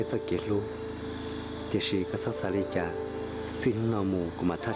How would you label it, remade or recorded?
recorded